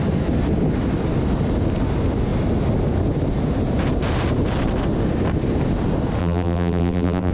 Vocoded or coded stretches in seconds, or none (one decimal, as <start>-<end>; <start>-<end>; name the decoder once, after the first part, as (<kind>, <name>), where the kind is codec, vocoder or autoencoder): 6.2-7.3 (vocoder, BigVGAN v2)